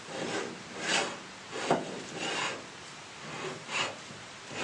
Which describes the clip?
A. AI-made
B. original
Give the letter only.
B